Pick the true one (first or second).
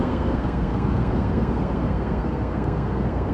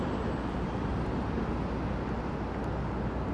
second